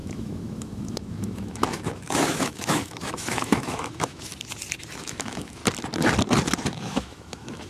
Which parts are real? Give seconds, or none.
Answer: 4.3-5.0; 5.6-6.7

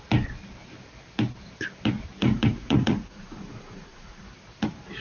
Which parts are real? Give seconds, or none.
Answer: 0.0-2.2; 4.2-5.0

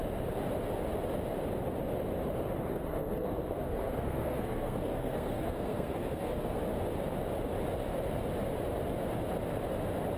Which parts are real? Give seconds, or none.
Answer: 0.0-2.7; 6.6-10.2

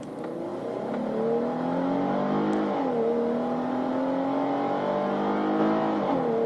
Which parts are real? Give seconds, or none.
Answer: 0.0-6.5

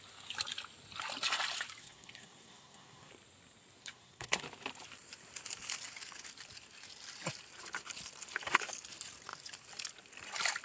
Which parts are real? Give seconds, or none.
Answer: 0.0-1.8; 3.1-3.8; 4.4-10.6